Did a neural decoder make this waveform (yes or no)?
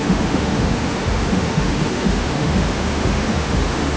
yes